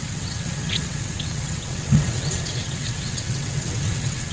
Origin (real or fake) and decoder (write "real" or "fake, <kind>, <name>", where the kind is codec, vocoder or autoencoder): fake, vocoder, WaveNeXt